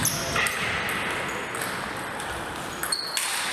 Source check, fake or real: real